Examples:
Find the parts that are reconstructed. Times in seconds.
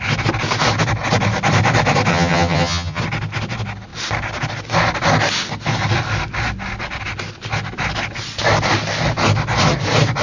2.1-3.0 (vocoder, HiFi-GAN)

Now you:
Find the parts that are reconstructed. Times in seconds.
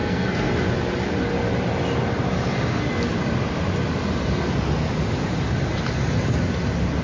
0.0-0.5 (codec, SNAC)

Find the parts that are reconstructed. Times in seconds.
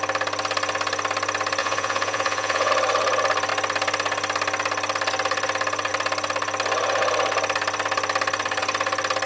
1.6-2.7 (vocoder, Vocos)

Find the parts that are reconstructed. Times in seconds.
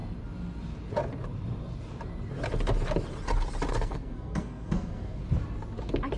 3.7-5.2 (codec, SNAC)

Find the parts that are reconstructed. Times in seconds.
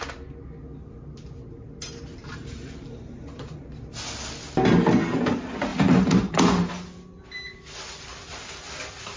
2.2-3.6 (vocoder, BigVGAN v2); 5.7-6.7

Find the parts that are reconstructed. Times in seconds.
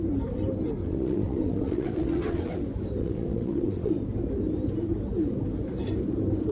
0.8-2.6 (vocoder, WaveNeXt); 3.0-3.9